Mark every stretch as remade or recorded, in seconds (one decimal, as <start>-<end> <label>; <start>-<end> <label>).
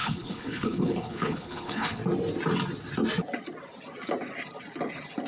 0.0-2.0 remade; 2.0-5.3 recorded